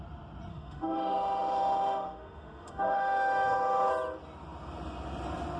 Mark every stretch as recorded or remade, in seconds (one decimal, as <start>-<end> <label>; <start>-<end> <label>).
0.0-0.5 recorded; 0.5-3.9 remade; 3.9-5.6 recorded